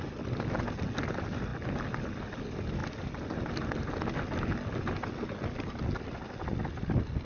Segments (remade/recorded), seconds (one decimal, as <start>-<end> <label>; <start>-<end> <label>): 0.0-7.3 recorded